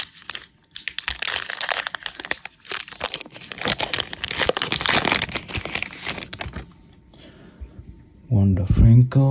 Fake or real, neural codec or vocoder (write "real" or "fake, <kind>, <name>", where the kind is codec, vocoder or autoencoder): real